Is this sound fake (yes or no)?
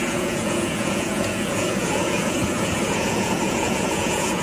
yes